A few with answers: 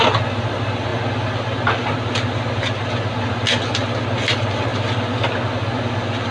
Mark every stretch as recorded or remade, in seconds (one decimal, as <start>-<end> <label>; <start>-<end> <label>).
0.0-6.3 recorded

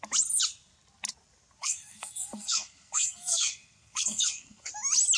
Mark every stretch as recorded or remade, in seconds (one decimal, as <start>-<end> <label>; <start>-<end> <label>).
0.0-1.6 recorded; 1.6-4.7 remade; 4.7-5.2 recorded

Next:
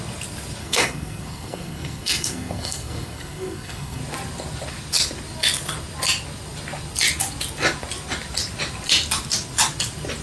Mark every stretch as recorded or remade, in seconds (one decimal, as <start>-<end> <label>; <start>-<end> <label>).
0.0-0.6 recorded; 0.6-4.0 remade; 4.0-10.2 recorded

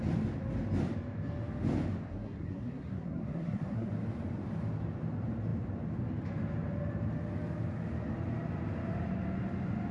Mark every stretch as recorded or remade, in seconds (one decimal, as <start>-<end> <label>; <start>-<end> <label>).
0.0-2.1 recorded; 2.1-3.9 remade; 3.9-9.9 recorded